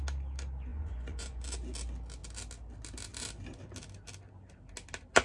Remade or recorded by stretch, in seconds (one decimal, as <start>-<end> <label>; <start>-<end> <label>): 0.0-0.7 recorded; 0.7-1.4 remade; 1.4-5.2 recorded